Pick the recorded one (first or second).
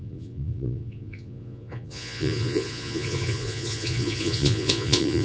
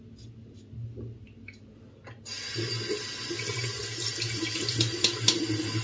second